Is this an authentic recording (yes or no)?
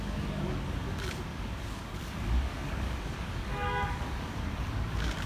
no